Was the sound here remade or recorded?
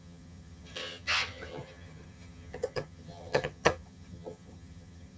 remade